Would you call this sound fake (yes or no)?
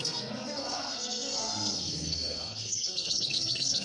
yes